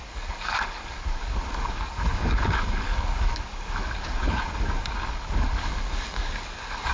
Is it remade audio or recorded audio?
remade